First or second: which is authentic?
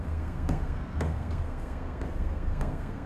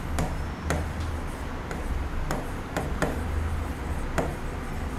second